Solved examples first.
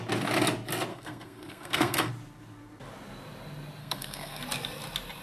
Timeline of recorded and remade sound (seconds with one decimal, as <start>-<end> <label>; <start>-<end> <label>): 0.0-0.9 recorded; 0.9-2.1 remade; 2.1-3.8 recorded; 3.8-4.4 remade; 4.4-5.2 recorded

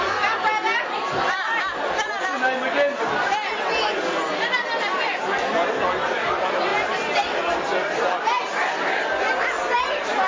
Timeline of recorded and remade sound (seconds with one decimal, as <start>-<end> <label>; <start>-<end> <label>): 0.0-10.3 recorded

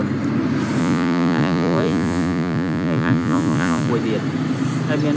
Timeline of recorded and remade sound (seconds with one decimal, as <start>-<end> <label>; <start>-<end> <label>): 0.0-0.8 recorded; 0.8-3.9 remade; 3.9-5.2 recorded

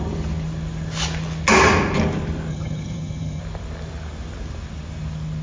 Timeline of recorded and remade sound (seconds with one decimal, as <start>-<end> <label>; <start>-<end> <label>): 0.0-2.5 recorded; 2.5-3.4 remade; 3.4-5.4 recorded

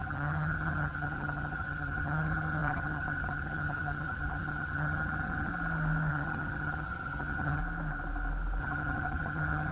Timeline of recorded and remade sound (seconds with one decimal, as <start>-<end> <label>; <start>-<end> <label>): 0.0-5.5 remade; 5.5-6.1 recorded; 6.1-7.6 remade; 7.6-8.6 recorded; 8.6-9.7 remade

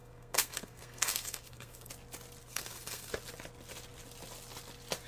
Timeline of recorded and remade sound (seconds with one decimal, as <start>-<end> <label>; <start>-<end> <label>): 0.0-1.9 remade; 1.9-2.4 recorded; 2.4-3.1 remade; 3.1-5.1 recorded

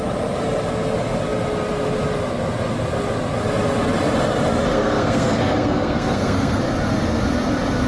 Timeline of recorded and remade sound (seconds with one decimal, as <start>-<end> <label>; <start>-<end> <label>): 0.0-4.7 recorded; 4.7-6.6 remade; 6.6-7.9 recorded